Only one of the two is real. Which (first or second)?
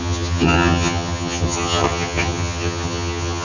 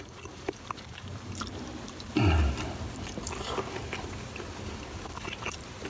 second